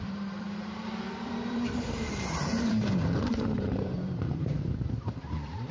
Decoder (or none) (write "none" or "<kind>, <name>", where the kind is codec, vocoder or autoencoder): vocoder, BigVGAN v2